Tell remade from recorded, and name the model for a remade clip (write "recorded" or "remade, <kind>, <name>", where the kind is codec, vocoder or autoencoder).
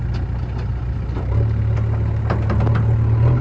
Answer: recorded